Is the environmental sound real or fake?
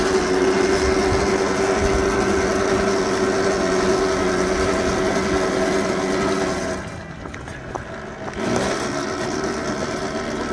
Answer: real